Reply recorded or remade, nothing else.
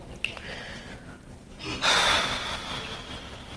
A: recorded